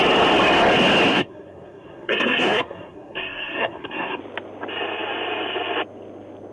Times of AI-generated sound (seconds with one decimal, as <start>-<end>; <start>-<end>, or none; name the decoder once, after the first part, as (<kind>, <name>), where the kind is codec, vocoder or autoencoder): 1.1-4.2 (codec, SNAC)

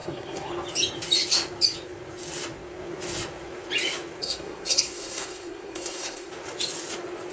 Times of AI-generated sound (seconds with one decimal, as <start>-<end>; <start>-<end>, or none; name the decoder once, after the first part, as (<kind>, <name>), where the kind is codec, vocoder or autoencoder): 0.0-0.5 (codec, SNAC); 4.2-6.3

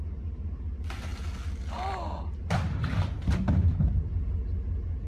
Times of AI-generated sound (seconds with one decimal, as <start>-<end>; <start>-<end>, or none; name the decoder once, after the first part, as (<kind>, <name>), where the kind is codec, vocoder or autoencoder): none

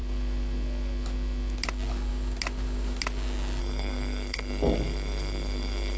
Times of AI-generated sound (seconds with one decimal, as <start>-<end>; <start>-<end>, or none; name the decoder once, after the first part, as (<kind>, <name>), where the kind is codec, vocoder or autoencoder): 3.6-6.0 (codec, SNAC)